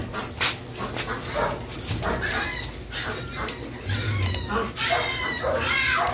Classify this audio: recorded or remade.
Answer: recorded